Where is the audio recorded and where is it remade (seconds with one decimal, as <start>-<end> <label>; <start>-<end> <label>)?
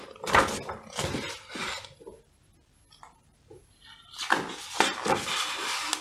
0.0-6.0 recorded